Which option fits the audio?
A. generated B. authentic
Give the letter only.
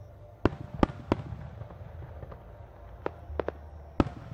B